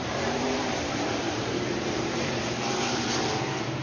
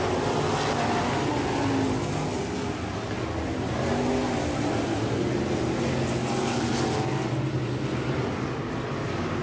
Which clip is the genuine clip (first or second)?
second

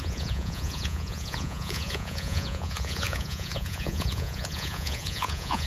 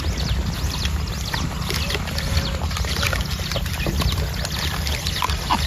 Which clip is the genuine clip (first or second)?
second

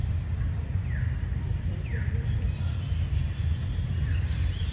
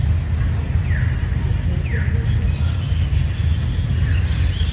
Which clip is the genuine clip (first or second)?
second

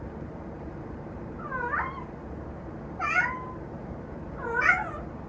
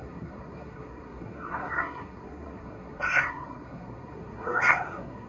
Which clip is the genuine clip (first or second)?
first